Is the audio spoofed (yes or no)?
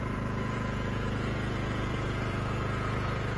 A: yes